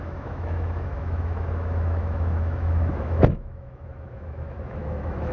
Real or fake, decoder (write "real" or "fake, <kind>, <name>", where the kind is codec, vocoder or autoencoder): fake, autoencoder, DAC-VAE